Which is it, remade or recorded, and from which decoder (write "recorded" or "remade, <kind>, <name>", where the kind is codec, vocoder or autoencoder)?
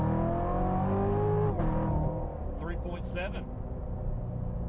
recorded